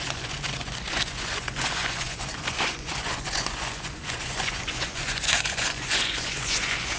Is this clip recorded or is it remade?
remade